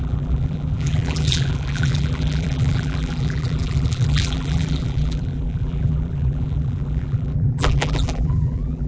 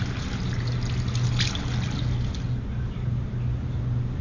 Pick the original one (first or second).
second